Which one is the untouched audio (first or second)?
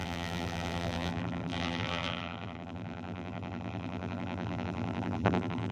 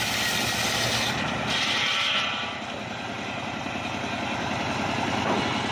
second